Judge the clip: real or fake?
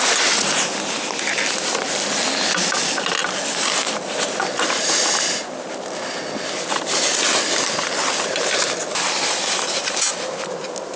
real